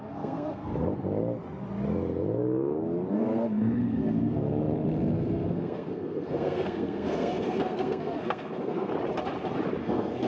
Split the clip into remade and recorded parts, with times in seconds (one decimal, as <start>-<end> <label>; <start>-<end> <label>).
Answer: 0.0-0.7 remade; 0.7-3.1 recorded; 3.1-8.9 remade; 8.9-9.8 recorded; 9.8-10.3 remade